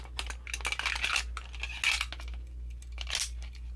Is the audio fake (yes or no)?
no